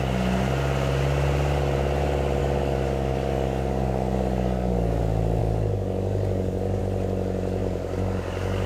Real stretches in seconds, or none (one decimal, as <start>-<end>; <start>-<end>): 0.0-2.4; 5.0-5.4; 6.8-7.6